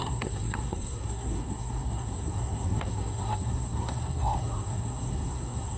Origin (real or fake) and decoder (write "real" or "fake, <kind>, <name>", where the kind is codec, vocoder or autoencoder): fake, codec, SNAC